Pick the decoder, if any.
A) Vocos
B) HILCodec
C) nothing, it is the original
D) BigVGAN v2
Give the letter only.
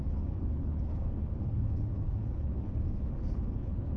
B